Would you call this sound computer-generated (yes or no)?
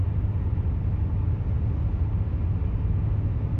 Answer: no